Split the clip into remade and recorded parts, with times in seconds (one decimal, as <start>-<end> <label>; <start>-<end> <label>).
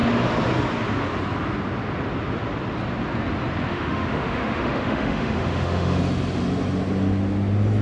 0.0-3.7 recorded; 3.7-6.0 remade; 6.0-7.8 recorded